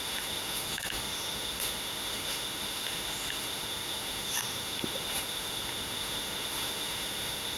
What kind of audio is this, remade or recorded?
remade